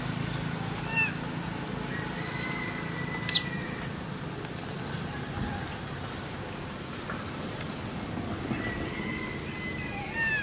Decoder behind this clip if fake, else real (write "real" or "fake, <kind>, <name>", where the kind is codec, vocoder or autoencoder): real